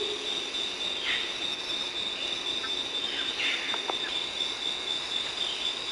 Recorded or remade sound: recorded